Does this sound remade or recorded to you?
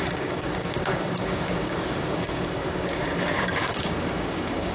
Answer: remade